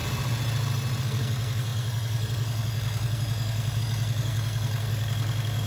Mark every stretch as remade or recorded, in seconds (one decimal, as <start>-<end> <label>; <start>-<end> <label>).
0.0-1.0 recorded; 1.0-5.7 remade